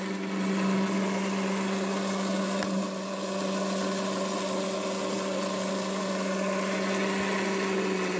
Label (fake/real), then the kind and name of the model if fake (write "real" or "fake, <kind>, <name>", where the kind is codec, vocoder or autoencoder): real